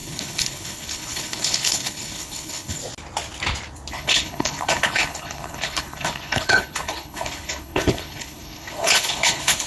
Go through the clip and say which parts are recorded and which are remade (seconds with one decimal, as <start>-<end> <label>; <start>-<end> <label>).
0.0-2.8 remade; 2.8-3.9 recorded; 3.9-9.7 remade

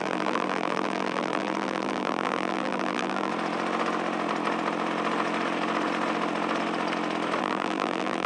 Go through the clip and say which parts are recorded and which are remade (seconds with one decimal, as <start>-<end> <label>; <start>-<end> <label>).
0.0-3.3 remade; 3.3-7.4 recorded; 7.4-8.3 remade

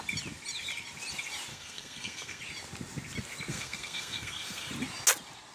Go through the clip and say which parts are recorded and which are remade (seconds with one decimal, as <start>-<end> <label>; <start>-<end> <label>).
0.0-1.5 recorded; 1.5-2.4 remade; 2.4-3.5 recorded; 3.5-4.7 remade; 4.7-5.5 recorded

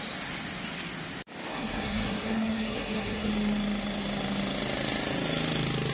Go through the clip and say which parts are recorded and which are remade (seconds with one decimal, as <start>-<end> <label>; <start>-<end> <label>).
0.0-1.5 recorded; 1.5-3.3 remade; 3.3-5.9 recorded

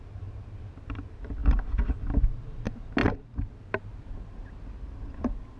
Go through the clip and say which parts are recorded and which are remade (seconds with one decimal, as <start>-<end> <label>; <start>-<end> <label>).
0.0-5.6 recorded

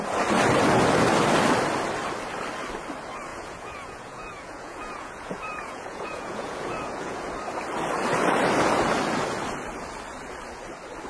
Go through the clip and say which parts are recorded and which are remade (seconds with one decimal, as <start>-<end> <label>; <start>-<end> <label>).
0.0-3.3 recorded; 3.3-7.3 remade; 7.3-11.1 recorded